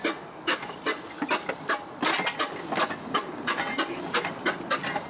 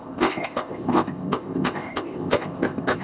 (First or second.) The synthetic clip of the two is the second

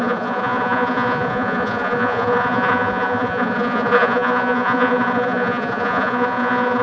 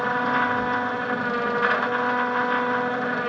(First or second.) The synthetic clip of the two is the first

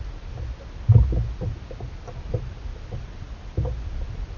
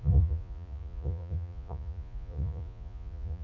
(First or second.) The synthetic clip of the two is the second